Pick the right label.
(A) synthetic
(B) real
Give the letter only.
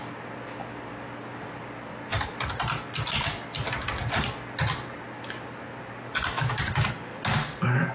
B